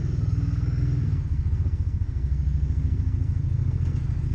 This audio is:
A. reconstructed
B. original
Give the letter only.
A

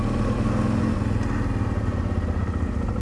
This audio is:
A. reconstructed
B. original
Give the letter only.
B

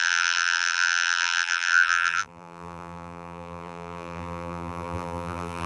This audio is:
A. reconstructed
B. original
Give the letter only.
A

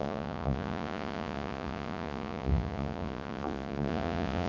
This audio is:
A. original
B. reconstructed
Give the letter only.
B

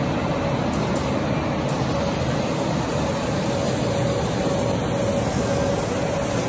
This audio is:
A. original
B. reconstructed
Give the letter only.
A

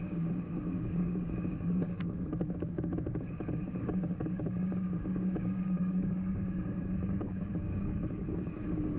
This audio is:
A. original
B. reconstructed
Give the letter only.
B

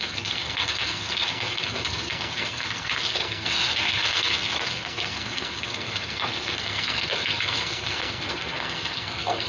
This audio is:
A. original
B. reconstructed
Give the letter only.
B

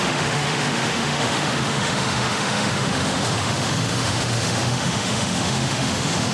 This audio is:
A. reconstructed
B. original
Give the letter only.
A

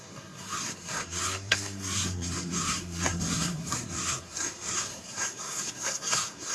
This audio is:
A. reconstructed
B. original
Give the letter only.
A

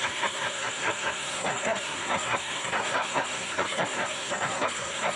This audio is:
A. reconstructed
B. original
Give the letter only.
A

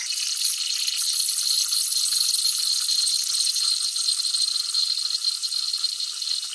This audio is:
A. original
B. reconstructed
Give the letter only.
A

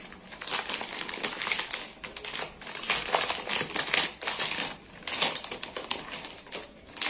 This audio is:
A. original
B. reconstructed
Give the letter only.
A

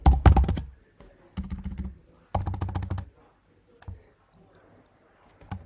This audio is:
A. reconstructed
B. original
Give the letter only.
B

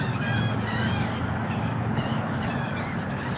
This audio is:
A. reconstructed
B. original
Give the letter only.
A